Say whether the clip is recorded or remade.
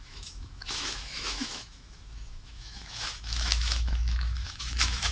remade